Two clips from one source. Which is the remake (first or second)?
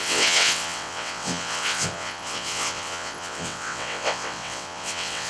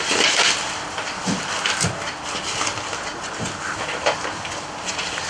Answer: first